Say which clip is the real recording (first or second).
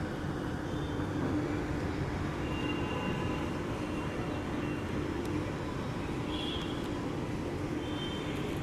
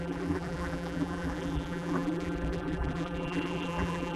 first